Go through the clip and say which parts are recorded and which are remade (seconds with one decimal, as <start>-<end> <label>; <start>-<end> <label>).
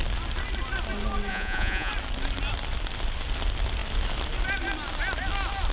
0.0-1.3 recorded; 1.3-1.9 remade; 1.9-5.7 recorded